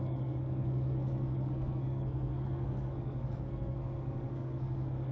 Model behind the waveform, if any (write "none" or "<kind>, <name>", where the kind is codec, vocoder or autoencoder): codec, SNAC